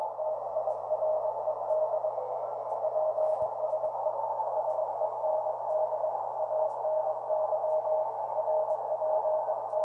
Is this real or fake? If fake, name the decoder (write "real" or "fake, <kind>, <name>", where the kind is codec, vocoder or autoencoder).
real